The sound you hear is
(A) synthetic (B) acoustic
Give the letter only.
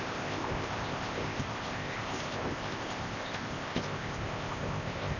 A